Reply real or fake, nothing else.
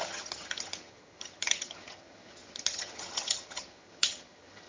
fake